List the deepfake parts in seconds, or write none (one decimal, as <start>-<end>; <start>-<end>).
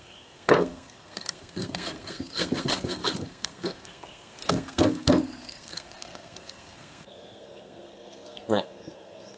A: 0.0-9.4